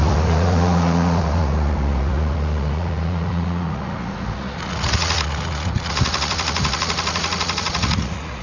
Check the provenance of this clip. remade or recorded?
remade